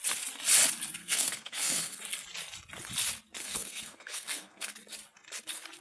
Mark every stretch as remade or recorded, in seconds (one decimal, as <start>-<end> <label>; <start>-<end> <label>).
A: 0.0-1.0 recorded; 1.0-2.0 remade; 2.0-3.4 recorded; 3.4-4.7 remade; 4.7-5.8 recorded